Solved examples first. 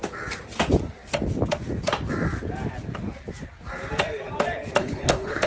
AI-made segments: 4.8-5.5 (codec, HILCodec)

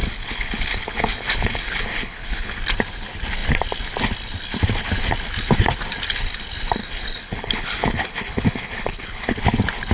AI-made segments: 0.0-2.6 (codec, HILCodec); 6.8-9.4

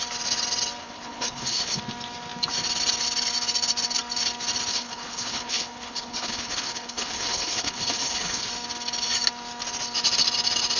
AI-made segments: 0.8-1.8 (codec, HILCodec); 4.7-8.5

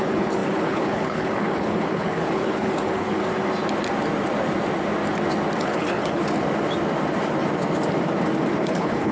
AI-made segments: 0.0-3.2 (codec, HILCodec); 5.6-6.2; 8.6-9.1

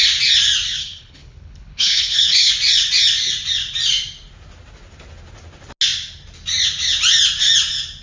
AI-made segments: 0.8-2.5 (codec, HILCodec)

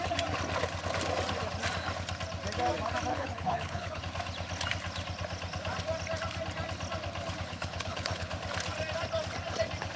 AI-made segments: 3.1-4.0 (codec, HILCodec); 7.5-8.3

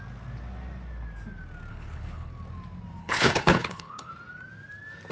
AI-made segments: 1.7-2.3 (codec, HILCodec); 3.0-4.1

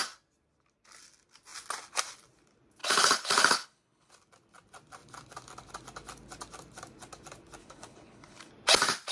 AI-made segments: 2.8-4.1 (codec, HILCodec); 7.6-8.5